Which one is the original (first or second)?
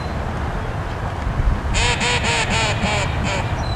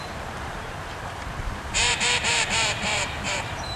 first